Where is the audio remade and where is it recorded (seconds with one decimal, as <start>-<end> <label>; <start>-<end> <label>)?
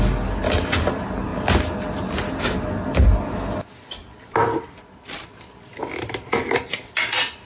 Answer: 0.0-7.5 recorded